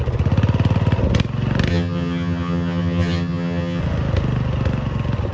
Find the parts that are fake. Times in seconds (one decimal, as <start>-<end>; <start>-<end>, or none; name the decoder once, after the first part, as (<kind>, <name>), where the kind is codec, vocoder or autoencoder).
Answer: 1.7-3.8 (vocoder, HiFi-GAN)